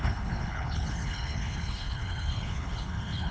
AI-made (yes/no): yes